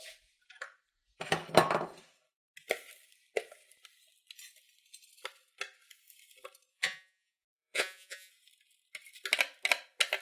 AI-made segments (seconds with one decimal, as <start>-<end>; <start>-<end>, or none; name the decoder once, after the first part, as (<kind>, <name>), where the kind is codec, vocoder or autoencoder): 6.7-8.3 (vocoder, Vocos)